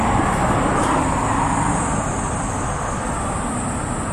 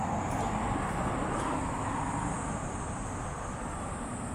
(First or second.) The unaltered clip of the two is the first